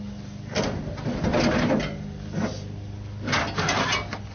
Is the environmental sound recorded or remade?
recorded